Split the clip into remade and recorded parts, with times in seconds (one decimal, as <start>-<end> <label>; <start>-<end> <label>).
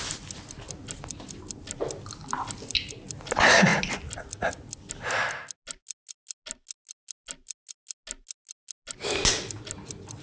0.0-10.2 recorded